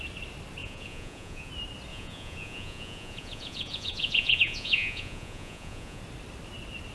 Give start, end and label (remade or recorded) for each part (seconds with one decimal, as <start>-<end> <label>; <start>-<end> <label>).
0.0-0.6 recorded; 0.6-1.5 remade; 1.5-1.9 recorded; 1.9-6.0 remade; 6.0-6.9 recorded